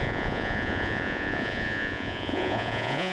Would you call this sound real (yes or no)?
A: no